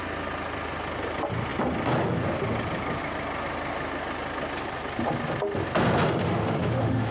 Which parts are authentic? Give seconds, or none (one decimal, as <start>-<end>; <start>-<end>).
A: 0.0-6.2